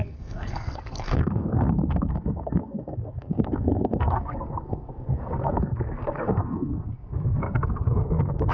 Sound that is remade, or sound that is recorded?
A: remade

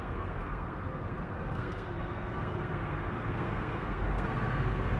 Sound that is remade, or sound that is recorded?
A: remade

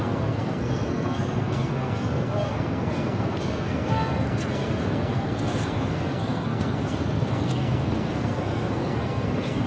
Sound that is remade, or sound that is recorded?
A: remade